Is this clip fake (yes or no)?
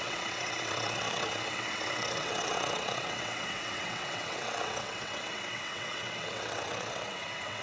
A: yes